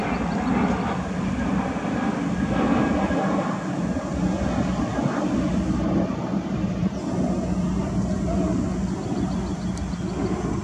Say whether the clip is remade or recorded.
recorded